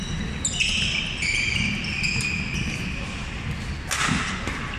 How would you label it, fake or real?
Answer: real